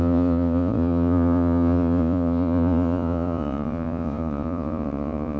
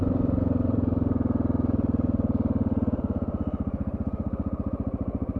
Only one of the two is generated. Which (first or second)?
first